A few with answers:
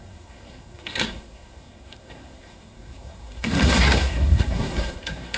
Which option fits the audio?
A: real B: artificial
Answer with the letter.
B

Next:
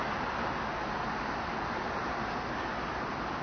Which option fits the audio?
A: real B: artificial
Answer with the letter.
A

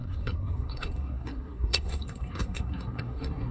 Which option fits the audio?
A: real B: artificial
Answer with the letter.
B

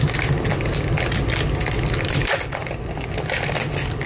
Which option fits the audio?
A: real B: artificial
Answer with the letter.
A